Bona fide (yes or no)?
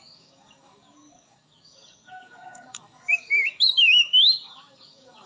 no